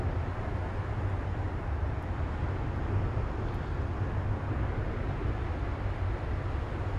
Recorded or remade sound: recorded